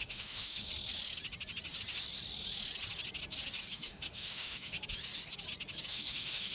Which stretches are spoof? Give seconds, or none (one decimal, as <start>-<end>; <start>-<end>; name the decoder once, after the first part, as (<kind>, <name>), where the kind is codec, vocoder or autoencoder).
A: 0.0-0.7 (autoencoder, DAC-VAE); 3.7-4.8; 5.9-6.5